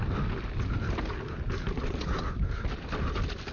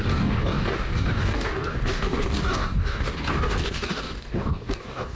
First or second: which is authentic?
first